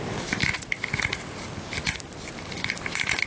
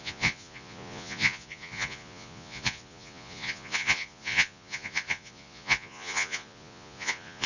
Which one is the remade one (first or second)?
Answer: second